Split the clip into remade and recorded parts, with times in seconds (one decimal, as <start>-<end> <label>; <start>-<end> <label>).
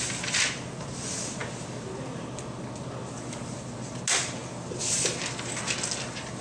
0.0-6.4 recorded